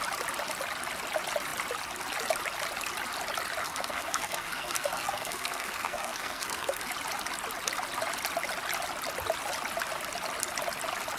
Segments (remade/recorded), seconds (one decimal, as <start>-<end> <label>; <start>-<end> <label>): 0.0-3.6 recorded; 3.6-6.9 remade; 6.9-11.2 recorded